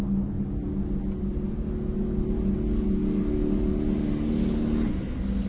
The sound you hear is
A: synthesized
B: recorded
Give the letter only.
B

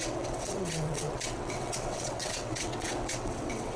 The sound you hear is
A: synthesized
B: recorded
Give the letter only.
A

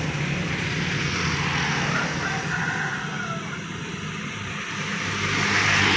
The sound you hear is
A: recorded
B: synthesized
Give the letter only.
A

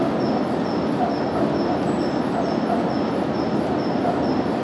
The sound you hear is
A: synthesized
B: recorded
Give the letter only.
B